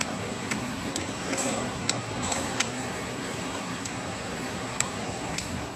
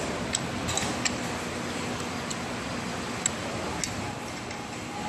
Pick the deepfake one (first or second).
first